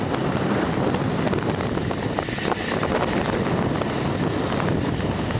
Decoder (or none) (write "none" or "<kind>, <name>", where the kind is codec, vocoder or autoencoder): none